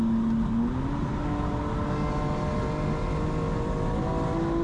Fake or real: real